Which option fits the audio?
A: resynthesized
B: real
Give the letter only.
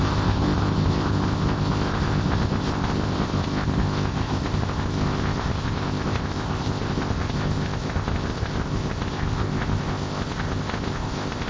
A